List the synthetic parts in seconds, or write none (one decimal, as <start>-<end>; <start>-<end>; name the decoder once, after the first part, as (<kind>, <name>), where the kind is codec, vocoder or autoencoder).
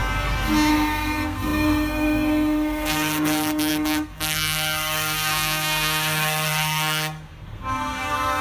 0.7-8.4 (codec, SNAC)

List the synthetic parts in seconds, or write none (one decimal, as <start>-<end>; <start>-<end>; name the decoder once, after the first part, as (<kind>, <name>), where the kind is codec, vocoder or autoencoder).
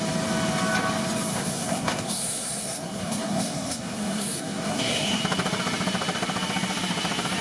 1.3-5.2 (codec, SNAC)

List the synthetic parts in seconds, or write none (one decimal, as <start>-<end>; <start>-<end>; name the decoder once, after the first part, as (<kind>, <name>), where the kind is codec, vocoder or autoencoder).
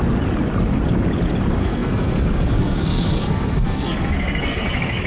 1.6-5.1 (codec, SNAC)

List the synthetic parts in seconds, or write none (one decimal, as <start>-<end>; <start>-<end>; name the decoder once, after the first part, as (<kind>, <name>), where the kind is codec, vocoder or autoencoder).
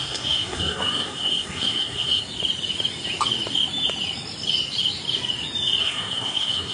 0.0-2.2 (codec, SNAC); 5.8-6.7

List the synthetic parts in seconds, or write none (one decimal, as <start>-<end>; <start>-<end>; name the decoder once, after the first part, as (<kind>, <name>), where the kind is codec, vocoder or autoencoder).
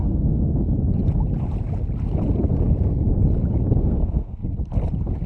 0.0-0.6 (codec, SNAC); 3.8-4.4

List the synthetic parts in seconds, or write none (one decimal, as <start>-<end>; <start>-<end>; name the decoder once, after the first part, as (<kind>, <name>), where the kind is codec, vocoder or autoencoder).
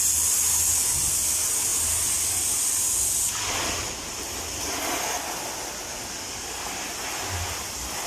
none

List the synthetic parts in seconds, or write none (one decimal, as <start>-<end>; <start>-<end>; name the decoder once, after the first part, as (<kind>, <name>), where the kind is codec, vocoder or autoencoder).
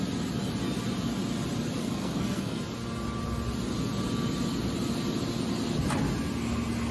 1.8-2.6 (codec, SNAC)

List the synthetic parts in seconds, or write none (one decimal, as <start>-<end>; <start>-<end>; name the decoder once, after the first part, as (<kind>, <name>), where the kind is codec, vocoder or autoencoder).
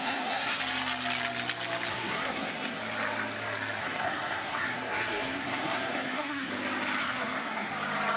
0.0-0.6 (codec, SNAC); 1.9-2.8; 3.8-6.5; 7.0-7.7